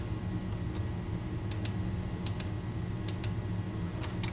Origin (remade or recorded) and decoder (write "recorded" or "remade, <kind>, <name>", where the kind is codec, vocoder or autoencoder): recorded